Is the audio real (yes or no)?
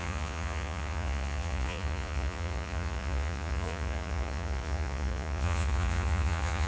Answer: no